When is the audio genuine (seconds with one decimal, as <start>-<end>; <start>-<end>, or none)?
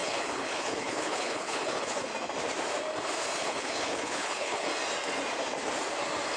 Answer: 2.1-3.4; 4.7-6.4